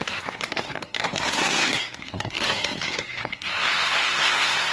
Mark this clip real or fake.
fake